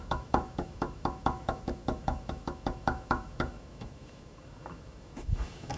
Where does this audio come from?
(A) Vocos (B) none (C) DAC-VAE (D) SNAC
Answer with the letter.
C